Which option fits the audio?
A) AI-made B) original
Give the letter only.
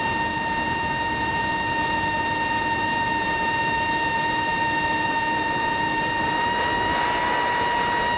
B